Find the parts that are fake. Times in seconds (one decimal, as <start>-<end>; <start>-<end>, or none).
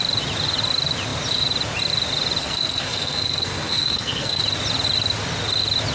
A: 2.4-4.4